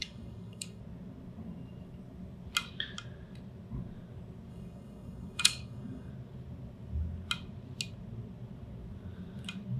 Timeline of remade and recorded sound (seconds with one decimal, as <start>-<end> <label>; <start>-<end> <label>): 0.0-0.8 remade; 0.8-4.5 recorded; 4.5-6.1 remade; 6.1-9.8 recorded